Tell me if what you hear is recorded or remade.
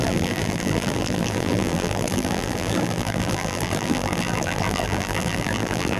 remade